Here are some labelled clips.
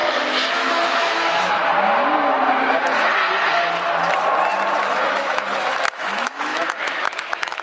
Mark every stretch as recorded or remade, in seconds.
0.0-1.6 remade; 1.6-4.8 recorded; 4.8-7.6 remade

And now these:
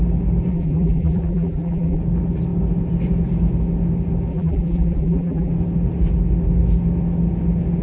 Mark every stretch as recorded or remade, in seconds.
0.0-0.5 recorded; 0.5-2.0 remade; 2.0-4.3 recorded; 4.3-5.5 remade; 5.5-7.8 recorded